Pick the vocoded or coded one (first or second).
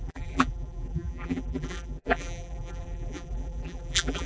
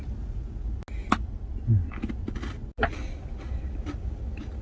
first